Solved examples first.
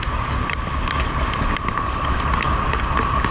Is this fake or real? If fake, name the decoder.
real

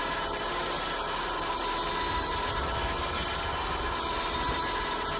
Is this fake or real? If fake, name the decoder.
real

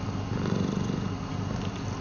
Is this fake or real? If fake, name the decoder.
real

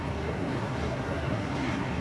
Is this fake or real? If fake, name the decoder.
fake, codec, SNAC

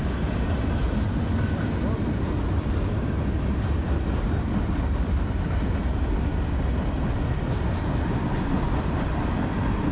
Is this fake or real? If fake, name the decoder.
real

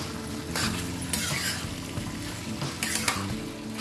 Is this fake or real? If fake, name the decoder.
real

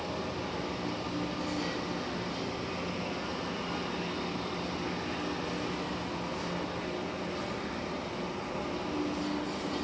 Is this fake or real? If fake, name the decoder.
real